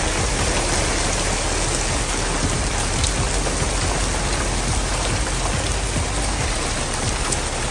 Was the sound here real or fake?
real